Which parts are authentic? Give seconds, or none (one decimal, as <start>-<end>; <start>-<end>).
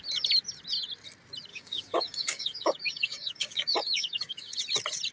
0.0-1.5; 4.6-5.1